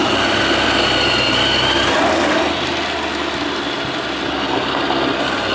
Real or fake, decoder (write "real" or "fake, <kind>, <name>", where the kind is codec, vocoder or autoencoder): real